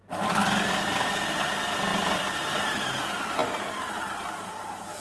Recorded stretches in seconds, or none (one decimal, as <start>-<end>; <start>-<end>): 0.0-1.9; 3.0-5.0